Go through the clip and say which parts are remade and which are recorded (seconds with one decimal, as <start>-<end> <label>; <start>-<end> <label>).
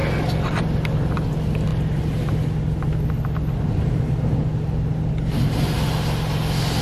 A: 0.0-6.8 recorded